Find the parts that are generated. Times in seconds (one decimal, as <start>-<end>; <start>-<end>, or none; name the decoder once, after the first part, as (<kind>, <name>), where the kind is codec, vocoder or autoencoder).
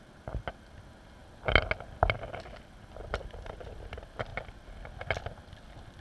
none